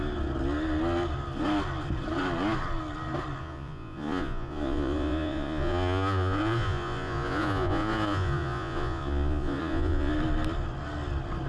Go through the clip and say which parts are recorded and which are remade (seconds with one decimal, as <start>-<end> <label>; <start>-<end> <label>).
0.0-3.4 recorded; 3.4-10.1 remade; 10.1-11.5 recorded